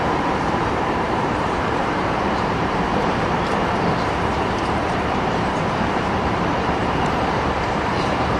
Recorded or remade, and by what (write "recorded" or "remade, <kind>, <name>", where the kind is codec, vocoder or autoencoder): remade, vocoder, BigVGAN v2